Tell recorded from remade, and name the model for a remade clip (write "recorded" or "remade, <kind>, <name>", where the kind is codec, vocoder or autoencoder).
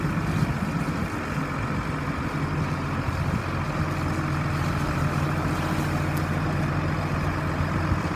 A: recorded